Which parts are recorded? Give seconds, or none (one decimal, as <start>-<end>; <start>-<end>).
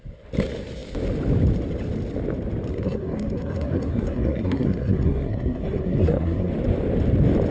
0.0-2.7; 6.5-7.5